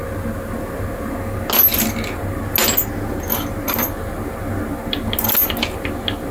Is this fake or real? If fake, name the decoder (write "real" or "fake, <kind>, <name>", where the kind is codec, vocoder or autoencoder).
real